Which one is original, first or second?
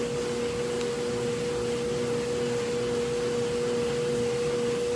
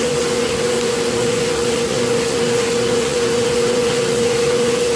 first